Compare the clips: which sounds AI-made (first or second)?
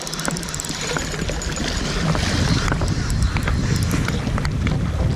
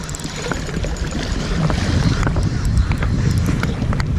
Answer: second